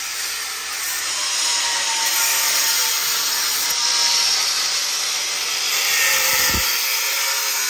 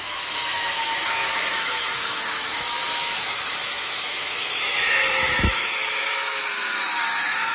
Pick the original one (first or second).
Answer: first